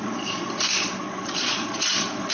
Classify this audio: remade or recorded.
remade